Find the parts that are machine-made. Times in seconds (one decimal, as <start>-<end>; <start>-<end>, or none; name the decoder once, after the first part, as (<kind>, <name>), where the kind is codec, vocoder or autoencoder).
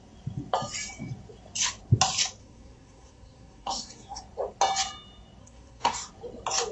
2.4-4.2 (codec, SNAC); 5.4-6.1